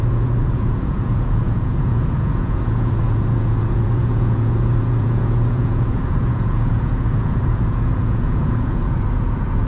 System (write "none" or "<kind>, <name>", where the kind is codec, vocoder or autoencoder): vocoder, Vocos